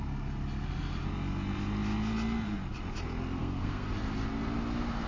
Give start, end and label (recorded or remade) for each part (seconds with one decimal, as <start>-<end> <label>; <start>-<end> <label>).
0.0-3.4 recorded; 3.4-3.9 remade; 3.9-5.1 recorded